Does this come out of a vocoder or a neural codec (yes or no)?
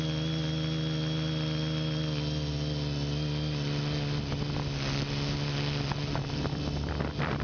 no